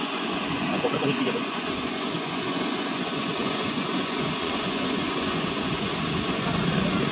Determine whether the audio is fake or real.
fake